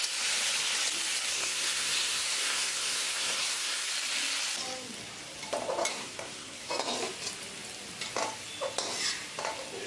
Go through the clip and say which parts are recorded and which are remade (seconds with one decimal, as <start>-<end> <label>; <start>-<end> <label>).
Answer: 0.0-1.3 recorded; 1.3-3.9 remade; 3.9-5.9 recorded; 5.9-6.7 remade; 6.7-9.9 recorded